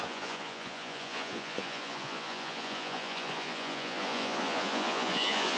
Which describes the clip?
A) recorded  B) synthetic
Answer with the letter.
B